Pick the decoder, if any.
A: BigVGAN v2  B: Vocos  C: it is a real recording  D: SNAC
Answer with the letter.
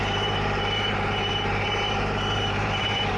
A